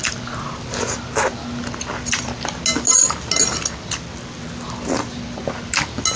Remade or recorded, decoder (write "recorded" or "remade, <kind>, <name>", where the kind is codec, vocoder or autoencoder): recorded